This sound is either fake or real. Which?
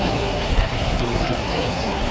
fake